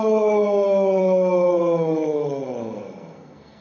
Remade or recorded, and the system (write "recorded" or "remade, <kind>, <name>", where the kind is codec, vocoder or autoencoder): remade, codec, SNAC